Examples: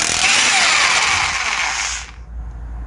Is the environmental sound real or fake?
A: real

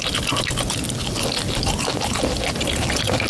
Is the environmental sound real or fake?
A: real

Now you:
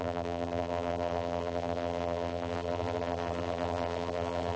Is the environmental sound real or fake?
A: fake